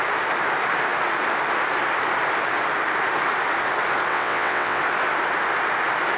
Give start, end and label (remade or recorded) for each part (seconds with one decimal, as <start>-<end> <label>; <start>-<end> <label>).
0.0-4.1 recorded; 4.1-4.8 remade; 4.8-6.2 recorded

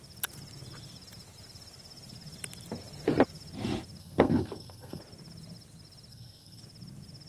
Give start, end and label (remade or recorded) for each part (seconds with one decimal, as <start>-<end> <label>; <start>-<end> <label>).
0.0-4.0 recorded; 4.0-5.0 remade; 5.0-6.1 recorded; 6.1-6.6 remade; 6.6-7.3 recorded

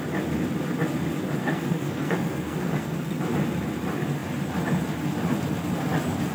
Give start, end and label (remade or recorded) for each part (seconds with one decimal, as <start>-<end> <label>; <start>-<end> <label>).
0.0-1.4 recorded; 1.4-3.2 remade; 3.2-6.3 recorded

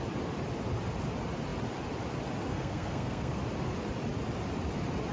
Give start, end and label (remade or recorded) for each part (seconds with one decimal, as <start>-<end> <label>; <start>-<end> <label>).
0.0-2.5 recorded; 2.5-3.4 remade; 3.4-5.1 recorded